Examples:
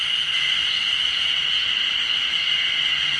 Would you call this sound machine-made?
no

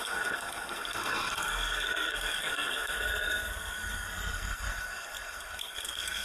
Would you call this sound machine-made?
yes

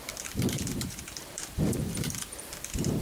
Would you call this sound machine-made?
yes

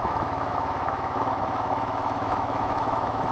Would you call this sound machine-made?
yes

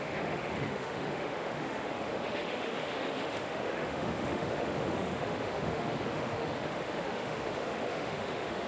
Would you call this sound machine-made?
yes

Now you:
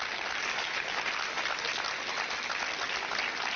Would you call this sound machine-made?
no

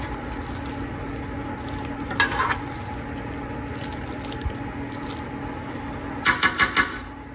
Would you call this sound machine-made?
no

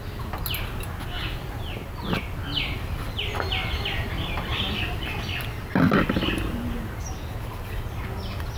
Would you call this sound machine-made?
no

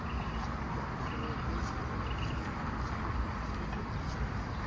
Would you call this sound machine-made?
no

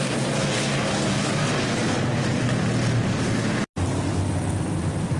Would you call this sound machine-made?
no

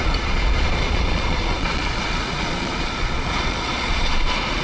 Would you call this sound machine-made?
yes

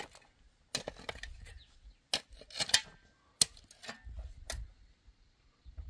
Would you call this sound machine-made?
no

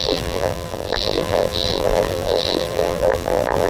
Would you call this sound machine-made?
yes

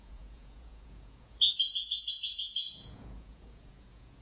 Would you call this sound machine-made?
yes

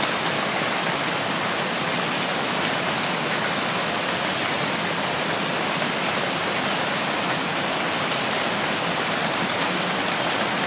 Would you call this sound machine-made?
no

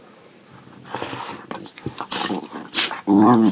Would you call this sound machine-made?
no